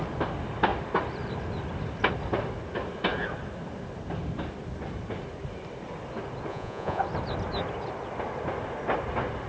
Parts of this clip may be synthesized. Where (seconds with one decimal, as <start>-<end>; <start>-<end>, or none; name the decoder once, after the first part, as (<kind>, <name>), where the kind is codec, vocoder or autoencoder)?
6.5-7.0 (vocoder, Vocos)

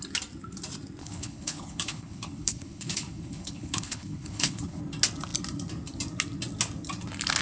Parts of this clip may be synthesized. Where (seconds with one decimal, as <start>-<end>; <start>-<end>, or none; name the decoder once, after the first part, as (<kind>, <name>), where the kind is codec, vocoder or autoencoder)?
1.0-4.8 (codec, HILCodec)

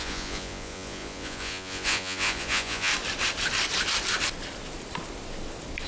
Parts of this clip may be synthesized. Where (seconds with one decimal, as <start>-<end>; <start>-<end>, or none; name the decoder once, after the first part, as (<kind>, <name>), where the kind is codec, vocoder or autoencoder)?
0.0-2.9 (vocoder, Vocos)

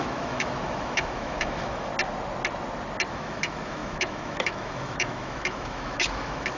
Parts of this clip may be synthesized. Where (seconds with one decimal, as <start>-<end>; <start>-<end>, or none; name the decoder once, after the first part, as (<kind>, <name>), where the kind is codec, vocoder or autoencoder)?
0.0-1.9 (autoencoder, DAC-VAE); 3.1-6.6

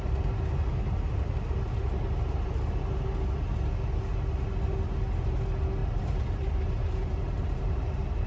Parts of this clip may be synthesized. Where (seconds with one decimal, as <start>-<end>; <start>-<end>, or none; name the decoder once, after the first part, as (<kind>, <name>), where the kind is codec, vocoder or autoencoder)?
5.8-8.3 (vocoder, BigVGAN v2)

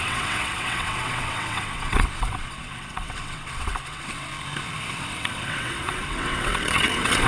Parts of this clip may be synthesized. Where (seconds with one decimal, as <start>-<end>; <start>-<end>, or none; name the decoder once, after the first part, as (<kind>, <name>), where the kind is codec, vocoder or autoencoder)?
0.0-4.3 (vocoder, WaveNeXt); 4.9-7.3